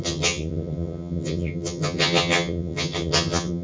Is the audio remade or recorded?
remade